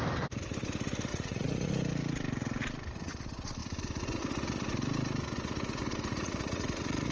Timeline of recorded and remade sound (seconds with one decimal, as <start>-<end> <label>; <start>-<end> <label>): 0.0-1.1 recorded; 1.1-1.7 remade; 1.7-6.1 recorded; 6.1-7.1 remade